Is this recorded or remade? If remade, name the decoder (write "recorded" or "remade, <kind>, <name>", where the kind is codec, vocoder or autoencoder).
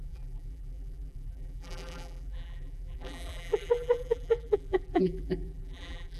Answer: remade, vocoder, BigVGAN v2